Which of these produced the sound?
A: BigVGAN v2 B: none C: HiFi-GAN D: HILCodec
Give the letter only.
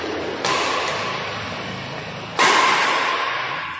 B